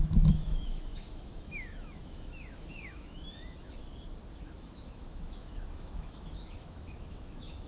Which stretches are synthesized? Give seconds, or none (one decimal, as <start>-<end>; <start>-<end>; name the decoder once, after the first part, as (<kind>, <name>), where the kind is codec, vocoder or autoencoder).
0.0-3.8 (autoencoder, DAC-VAE); 4.6-7.7